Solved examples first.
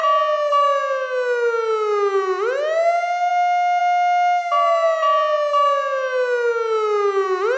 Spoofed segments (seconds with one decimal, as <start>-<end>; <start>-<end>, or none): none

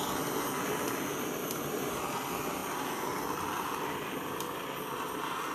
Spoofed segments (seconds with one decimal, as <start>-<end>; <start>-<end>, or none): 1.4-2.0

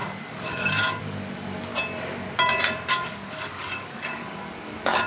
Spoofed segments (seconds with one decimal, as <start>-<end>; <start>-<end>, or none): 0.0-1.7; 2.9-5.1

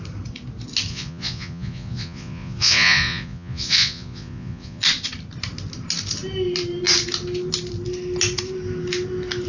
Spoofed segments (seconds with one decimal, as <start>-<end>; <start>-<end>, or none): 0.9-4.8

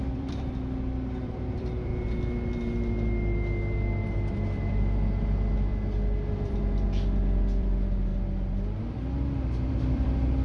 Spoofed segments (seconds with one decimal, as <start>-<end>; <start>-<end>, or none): 0.0-1.9; 4.3-5.7; 6.3-8.1; 9.7-10.4